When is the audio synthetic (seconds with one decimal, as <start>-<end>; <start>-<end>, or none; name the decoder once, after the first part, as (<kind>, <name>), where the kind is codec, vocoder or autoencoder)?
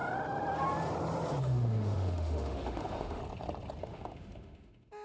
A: 1.4-3.2 (autoencoder, DAC-VAE); 3.8-5.0